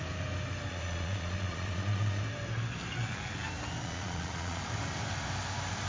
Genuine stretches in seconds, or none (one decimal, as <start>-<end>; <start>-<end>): 0.0-0.7; 2.2-3.8; 4.6-5.9